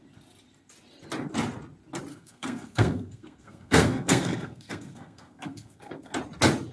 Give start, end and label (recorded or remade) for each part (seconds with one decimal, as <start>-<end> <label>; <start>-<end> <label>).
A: 0.0-2.1 recorded; 2.1-6.1 remade; 6.1-6.7 recorded